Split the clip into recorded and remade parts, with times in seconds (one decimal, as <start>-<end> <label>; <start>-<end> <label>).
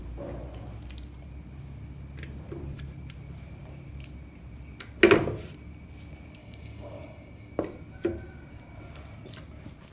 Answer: 0.0-6.4 recorded; 6.4-7.5 remade; 7.5-9.9 recorded